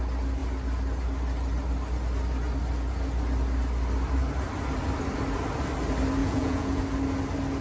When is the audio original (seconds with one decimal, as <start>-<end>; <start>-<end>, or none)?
0.0-6.2; 6.8-7.6